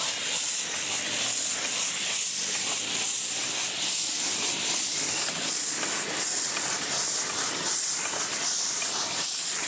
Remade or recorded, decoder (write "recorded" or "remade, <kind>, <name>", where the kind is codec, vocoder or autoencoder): recorded